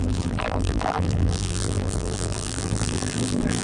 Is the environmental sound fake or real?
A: fake